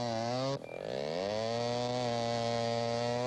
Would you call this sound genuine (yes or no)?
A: yes